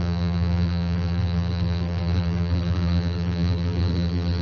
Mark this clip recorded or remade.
remade